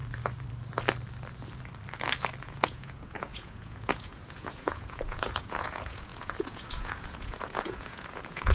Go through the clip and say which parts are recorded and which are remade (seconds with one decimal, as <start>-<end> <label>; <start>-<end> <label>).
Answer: 0.0-2.4 recorded; 2.4-8.5 remade